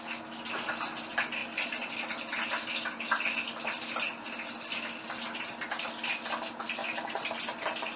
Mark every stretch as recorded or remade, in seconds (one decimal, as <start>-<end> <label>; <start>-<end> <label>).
0.0-8.0 recorded